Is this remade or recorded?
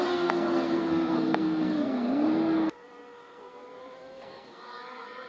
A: remade